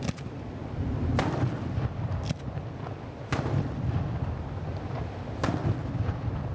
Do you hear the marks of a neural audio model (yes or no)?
no